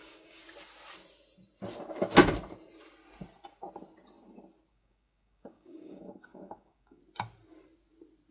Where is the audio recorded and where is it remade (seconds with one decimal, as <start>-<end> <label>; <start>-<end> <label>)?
0.0-0.4 remade; 0.4-4.7 recorded; 4.7-7.0 remade; 7.0-8.3 recorded